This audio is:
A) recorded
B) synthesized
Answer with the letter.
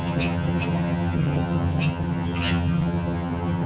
B